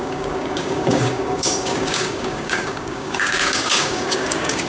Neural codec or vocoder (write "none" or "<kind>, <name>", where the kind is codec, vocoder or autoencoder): codec, DAC